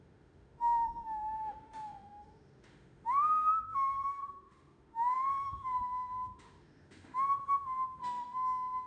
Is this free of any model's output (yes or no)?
no